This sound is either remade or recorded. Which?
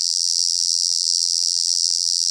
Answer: remade